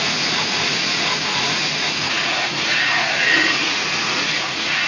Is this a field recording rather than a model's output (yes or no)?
no